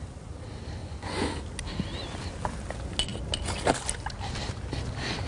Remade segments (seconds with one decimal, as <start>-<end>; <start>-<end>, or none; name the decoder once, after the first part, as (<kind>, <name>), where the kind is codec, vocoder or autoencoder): 0.8-1.4 (vocoder, Vocos)